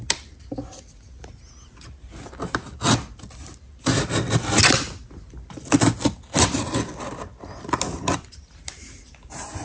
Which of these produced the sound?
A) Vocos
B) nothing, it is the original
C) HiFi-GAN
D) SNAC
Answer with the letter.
B